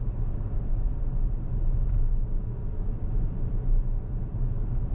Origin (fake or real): real